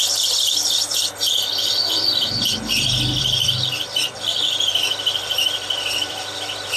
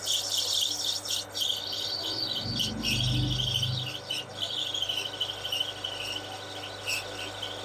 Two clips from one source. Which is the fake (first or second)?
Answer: first